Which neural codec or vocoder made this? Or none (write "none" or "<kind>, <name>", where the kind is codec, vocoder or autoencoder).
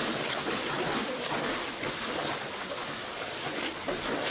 none